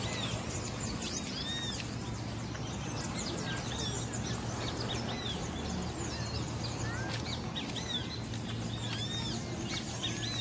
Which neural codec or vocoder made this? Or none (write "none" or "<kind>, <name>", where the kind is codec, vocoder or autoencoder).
none